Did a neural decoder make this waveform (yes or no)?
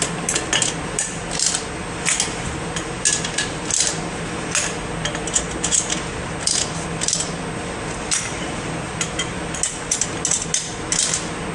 no